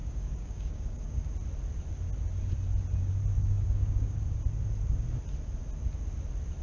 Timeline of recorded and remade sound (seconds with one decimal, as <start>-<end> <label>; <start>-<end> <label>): 0.0-1.3 remade; 1.3-3.3 recorded; 3.3-4.2 remade; 4.2-6.6 recorded